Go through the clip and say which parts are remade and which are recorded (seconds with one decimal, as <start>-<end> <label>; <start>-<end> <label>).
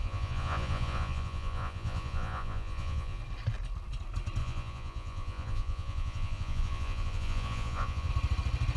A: 0.0-3.2 remade; 3.2-4.4 recorded; 4.4-8.1 remade; 8.1-8.8 recorded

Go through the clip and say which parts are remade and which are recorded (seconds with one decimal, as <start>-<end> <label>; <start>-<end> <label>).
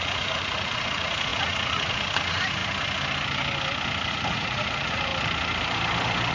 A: 0.0-2.6 remade; 2.6-4.1 recorded; 4.1-5.1 remade; 5.1-6.3 recorded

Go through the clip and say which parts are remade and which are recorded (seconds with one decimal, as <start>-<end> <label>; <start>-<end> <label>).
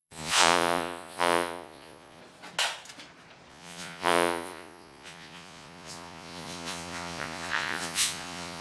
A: 0.0-2.2 remade; 2.2-3.5 recorded; 3.5-8.6 remade